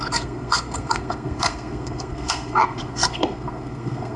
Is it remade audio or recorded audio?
remade